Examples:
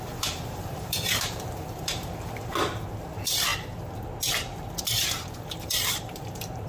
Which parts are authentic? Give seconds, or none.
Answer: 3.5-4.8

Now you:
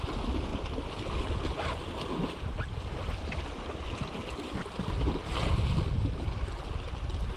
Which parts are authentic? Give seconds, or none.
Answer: 0.0-7.4

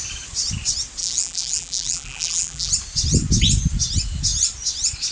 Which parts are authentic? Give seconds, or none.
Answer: 0.0-1.0; 2.7-5.1

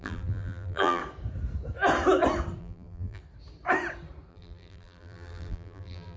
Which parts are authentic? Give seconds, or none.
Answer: 1.0-2.6; 3.2-4.3

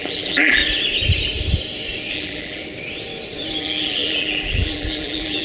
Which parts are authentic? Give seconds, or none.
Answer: 0.6-2.1; 2.6-3.6

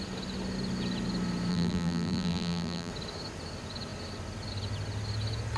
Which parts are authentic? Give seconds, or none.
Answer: 0.0-1.5; 2.9-5.6

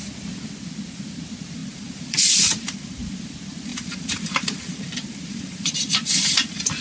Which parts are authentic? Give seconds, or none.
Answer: 0.0-1.6; 3.2-3.7